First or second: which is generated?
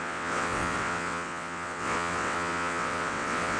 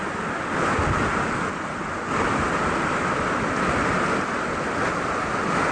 first